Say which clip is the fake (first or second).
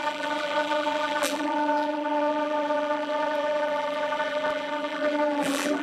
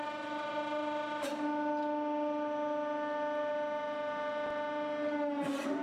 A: first